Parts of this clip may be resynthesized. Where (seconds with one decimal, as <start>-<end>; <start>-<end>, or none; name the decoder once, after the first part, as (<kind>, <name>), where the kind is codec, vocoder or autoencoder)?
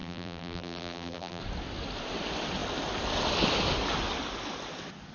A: 0.0-1.4 (vocoder, BigVGAN v2)